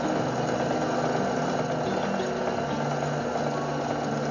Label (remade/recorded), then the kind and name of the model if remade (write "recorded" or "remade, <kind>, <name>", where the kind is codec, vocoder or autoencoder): recorded